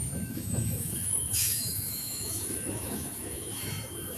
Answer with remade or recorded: remade